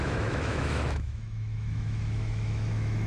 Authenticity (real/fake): fake